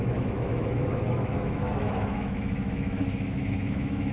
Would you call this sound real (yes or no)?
no